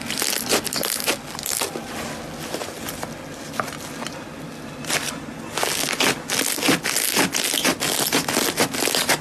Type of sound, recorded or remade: recorded